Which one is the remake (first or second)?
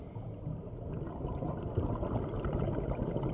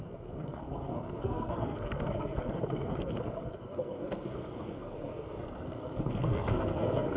second